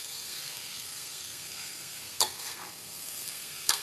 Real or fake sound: fake